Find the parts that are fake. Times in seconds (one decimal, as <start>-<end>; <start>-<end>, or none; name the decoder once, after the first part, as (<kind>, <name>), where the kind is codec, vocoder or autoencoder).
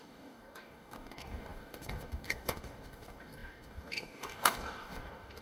0.0-5.4 (codec, DAC)